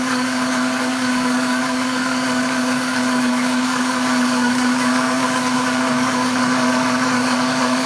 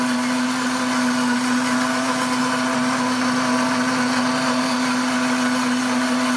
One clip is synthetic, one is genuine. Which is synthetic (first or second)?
first